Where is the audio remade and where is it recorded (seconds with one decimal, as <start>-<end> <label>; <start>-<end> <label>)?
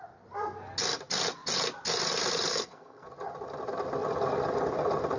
0.0-2.5 recorded; 2.5-3.1 remade; 3.1-5.2 recorded